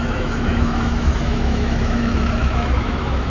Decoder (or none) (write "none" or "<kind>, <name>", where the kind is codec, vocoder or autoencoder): autoencoder, DAC-VAE